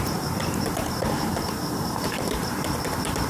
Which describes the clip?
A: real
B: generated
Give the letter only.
B